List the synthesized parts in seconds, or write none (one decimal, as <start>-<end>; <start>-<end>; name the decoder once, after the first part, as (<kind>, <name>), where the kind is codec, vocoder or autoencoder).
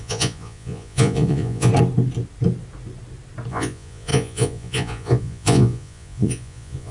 0.0-1.7 (vocoder, Vocos); 3.5-6.9